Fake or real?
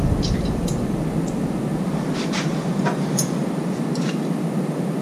fake